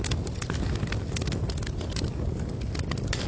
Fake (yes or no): no